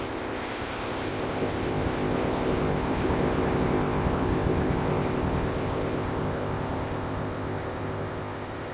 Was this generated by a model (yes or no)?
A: yes